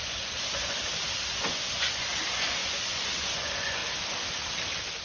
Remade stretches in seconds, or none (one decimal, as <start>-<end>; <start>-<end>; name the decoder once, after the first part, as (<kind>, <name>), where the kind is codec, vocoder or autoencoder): 0.0-0.8 (vocoder, Vocos); 1.3-3.8